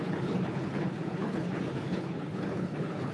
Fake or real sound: fake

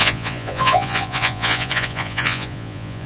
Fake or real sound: fake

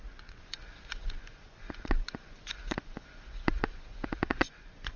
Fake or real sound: fake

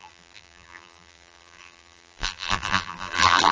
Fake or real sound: fake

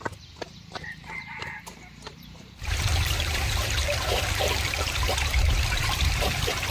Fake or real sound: fake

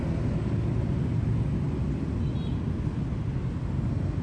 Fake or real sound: real